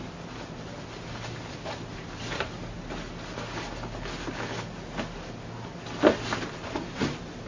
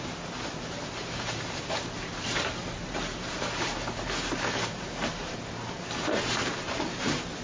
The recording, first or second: first